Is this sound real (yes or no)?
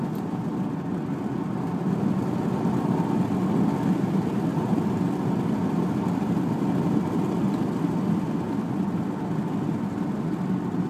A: yes